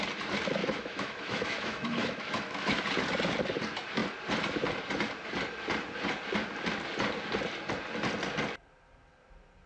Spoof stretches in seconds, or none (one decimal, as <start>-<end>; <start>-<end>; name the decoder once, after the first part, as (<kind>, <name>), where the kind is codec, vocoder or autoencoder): 0.6-2.8 (autoencoder, DAC-VAE)